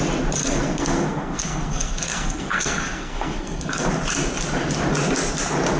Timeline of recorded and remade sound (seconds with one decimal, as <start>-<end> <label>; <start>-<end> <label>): 0.0-0.4 recorded; 0.4-3.9 remade; 3.9-5.8 recorded